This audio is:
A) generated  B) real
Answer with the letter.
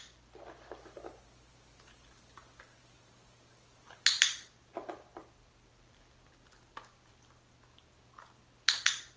B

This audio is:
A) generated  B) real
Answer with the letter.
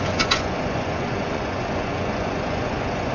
A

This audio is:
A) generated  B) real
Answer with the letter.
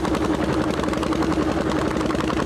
B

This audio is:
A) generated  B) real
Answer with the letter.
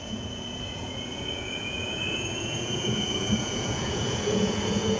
A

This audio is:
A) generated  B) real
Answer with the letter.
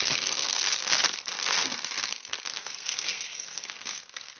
A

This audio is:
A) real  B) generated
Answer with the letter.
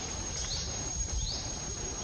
B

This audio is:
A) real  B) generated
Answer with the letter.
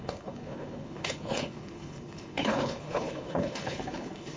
B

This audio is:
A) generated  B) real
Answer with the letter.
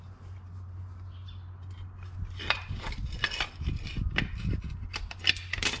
B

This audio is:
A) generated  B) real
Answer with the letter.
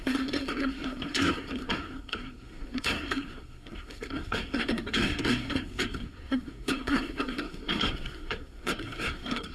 A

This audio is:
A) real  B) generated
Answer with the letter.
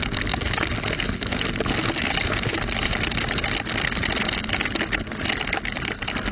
A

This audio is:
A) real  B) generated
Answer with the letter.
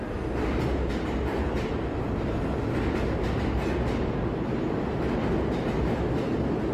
A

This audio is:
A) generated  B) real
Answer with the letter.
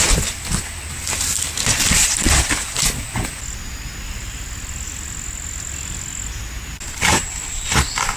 B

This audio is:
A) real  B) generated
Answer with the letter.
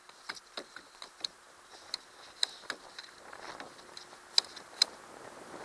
A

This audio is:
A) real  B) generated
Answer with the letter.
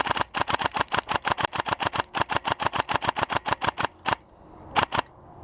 A